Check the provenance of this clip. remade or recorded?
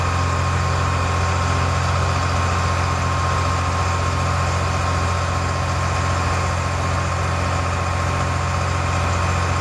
recorded